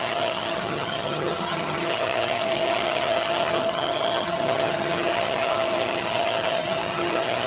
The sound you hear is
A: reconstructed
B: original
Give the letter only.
A